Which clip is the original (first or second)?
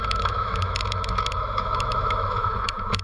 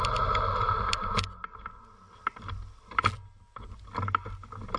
second